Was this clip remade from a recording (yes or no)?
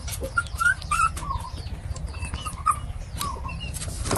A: no